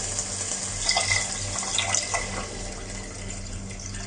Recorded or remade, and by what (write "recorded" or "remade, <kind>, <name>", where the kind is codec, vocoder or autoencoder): recorded